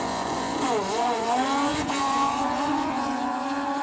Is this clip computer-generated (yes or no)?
yes